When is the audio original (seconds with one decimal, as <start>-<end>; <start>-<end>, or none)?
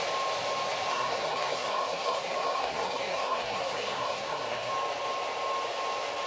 0.0-0.9; 4.7-6.3